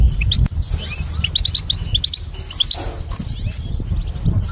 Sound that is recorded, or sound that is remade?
recorded